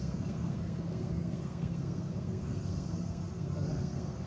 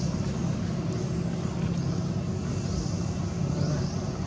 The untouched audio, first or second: second